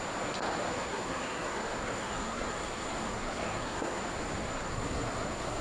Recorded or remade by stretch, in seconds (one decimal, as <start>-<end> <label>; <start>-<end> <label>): 0.0-0.7 recorded; 0.7-4.0 remade; 4.0-4.4 recorded; 4.4-5.6 remade